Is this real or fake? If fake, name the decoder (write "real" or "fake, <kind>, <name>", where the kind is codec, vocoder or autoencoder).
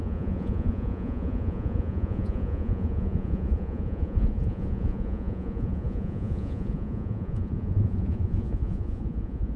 fake, vocoder, Vocos